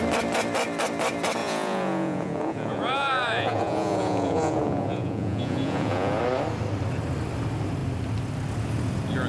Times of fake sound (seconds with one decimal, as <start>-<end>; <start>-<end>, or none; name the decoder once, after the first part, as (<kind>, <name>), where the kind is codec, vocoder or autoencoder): 1.4-6.2 (vocoder, Vocos)